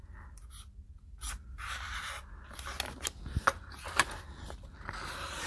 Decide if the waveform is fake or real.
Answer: real